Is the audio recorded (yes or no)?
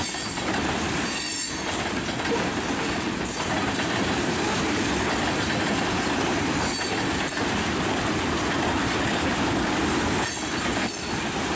no